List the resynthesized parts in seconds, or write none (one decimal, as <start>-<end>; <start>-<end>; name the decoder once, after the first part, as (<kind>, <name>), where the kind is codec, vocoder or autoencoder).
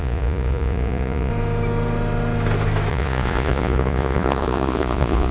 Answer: 0.0-1.3 (vocoder, Vocos); 2.9-5.3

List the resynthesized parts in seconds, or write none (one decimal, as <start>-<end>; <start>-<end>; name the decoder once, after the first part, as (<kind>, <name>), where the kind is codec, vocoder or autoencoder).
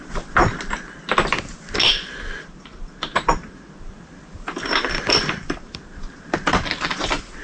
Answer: 0.0-0.4 (vocoder, BigVGAN v2); 1.9-7.4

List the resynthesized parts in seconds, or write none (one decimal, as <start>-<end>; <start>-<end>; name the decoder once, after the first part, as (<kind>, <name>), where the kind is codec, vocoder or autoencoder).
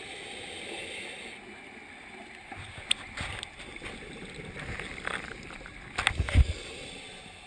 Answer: none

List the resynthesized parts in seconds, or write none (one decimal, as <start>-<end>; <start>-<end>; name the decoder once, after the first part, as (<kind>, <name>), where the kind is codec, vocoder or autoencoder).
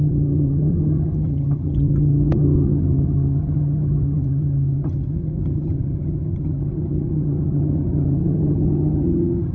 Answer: 0.0-9.5 (vocoder, HiFi-GAN)